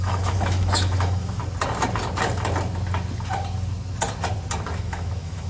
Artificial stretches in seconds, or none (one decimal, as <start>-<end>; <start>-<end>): 0.0-1.4; 4.7-5.5